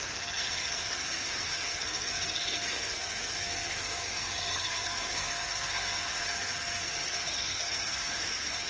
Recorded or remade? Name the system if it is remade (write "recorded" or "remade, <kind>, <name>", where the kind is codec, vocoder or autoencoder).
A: remade, codec, SNAC